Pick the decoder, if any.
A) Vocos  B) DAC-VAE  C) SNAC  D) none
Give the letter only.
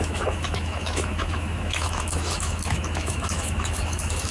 B